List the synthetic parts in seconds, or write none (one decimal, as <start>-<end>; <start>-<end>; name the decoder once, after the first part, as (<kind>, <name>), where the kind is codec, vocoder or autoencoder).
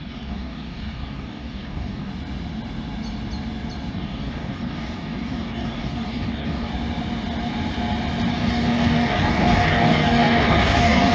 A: 0.0-2.1 (codec, DAC); 3.9-6.7; 8.3-11.1